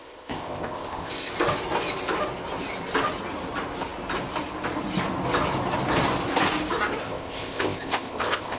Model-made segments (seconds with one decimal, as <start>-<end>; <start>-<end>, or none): 0.0-1.3; 7.0-8.6